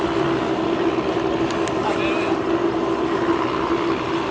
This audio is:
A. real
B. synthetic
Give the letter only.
A